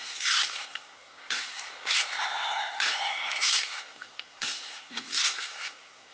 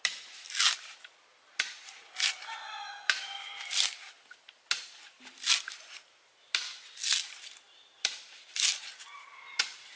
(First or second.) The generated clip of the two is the first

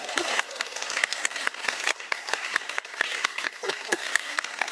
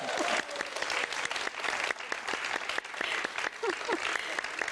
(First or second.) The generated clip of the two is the first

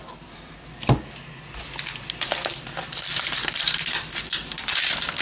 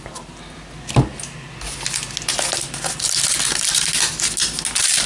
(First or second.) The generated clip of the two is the first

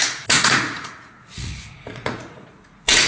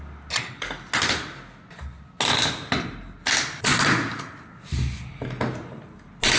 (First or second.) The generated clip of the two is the first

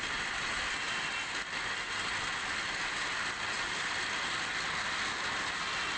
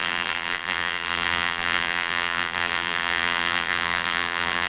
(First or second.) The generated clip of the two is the second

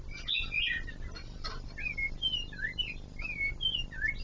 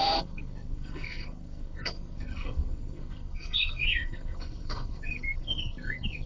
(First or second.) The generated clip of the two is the second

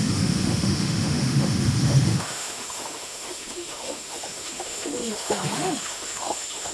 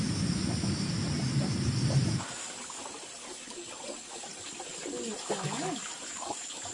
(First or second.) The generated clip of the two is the first